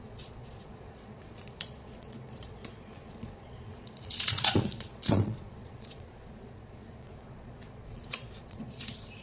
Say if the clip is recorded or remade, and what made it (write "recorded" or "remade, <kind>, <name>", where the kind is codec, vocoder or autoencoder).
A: remade, vocoder, Vocos